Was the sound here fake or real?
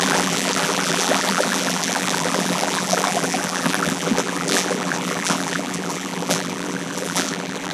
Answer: fake